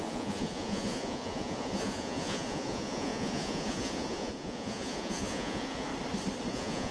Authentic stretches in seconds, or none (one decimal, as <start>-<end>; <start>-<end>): 5.9-6.5

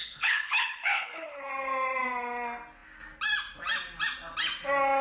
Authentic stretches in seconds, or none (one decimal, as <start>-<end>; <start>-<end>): 1.5-5.0

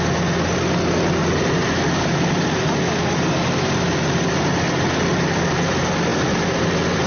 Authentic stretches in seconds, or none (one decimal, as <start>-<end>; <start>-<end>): 0.0-7.1